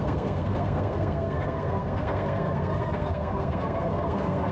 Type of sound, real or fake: fake